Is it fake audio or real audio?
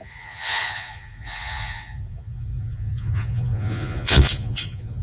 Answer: fake